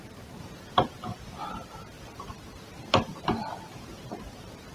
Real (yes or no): yes